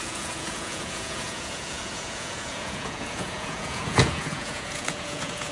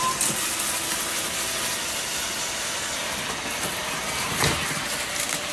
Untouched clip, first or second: second